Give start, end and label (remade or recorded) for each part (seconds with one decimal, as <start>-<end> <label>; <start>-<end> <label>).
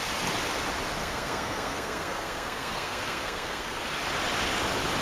0.0-1.0 recorded; 1.0-3.8 remade; 3.8-5.0 recorded